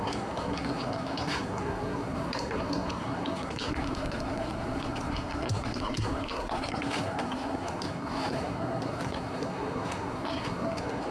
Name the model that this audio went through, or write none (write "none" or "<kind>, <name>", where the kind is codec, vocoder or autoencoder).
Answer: codec, SNAC